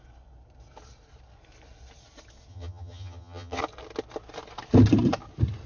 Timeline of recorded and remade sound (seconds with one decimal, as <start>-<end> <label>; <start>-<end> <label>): 0.0-2.5 recorded; 2.5-3.6 remade; 3.6-5.7 recorded